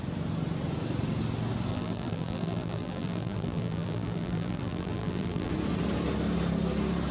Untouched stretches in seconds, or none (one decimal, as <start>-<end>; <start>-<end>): 0.0-1.7; 5.5-7.1

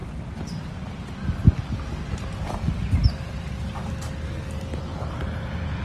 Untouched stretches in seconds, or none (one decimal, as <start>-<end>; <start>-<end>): 0.0-4.9

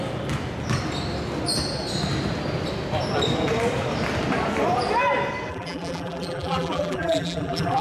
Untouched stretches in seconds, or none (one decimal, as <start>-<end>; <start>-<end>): 0.0-5.5

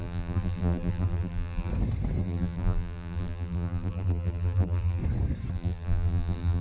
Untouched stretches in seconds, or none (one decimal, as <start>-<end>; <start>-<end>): 1.7-2.2; 5.0-5.5

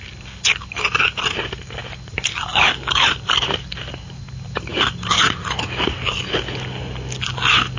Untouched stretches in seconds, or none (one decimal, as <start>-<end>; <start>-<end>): 0.0-7.8

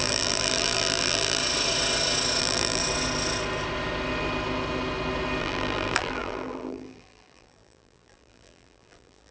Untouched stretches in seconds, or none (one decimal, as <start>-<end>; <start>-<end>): 1.4-2.4; 2.8-5.4

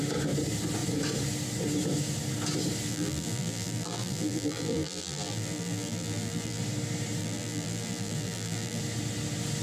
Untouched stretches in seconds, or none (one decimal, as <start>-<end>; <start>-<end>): 0.0-2.9; 6.6-7.2; 8.8-9.6